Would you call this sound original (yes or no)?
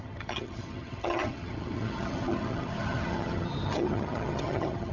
no